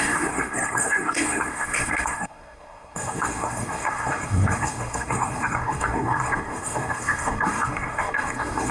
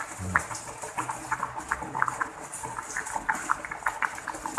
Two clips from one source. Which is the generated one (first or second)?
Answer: first